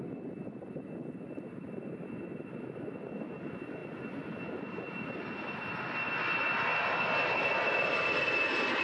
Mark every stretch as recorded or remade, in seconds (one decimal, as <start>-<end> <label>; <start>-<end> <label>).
0.0-8.8 recorded